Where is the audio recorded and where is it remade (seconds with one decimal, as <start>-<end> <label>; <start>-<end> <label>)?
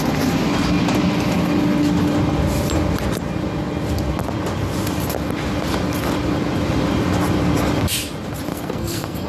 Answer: 0.0-8.5 recorded; 8.5-9.3 remade